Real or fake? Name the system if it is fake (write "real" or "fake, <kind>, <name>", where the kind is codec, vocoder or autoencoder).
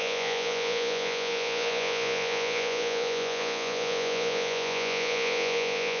fake, vocoder, Vocos